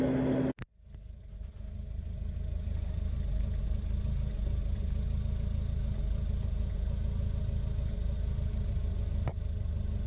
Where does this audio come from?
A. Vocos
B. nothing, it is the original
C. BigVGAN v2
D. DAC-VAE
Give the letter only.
B